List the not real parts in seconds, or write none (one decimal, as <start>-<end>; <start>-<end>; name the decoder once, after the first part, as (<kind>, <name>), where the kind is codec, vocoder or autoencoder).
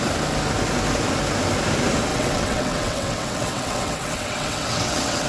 2.1-5.3 (vocoder, WaveNeXt)